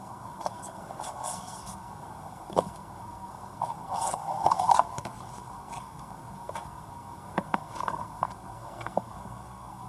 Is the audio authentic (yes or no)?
no